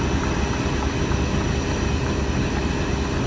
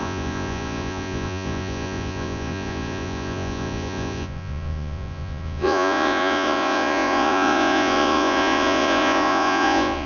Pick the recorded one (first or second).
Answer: first